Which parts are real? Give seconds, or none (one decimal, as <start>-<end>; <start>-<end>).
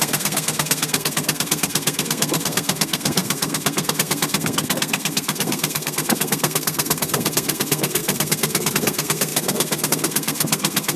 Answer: none